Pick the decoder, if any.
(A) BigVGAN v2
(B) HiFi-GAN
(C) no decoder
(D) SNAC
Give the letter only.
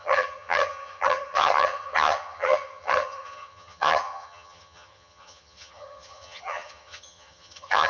B